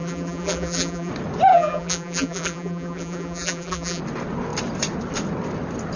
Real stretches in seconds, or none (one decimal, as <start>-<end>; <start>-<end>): 1.1-1.5; 4.0-6.0